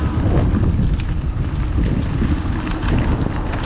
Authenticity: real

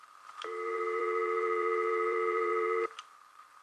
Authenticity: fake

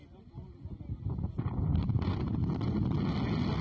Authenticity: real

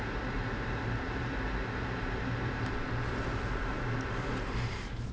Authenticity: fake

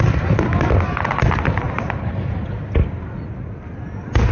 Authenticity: real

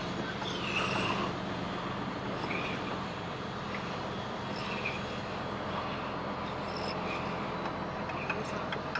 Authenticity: real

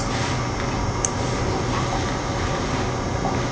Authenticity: real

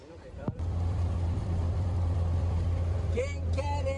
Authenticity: fake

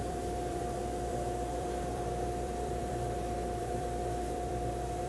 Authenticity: fake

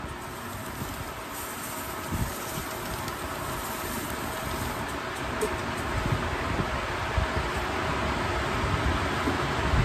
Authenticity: real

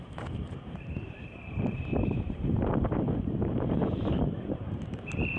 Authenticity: fake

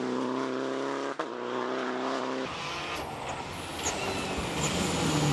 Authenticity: real